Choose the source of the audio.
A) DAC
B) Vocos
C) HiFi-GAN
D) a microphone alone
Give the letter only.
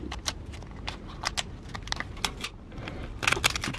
D